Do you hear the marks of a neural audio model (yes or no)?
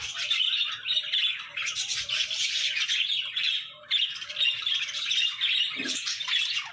no